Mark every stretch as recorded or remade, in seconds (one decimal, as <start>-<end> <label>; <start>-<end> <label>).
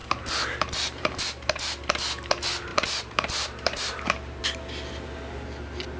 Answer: 0.0-1.2 remade; 1.2-2.7 recorded; 2.7-4.4 remade; 4.4-6.0 recorded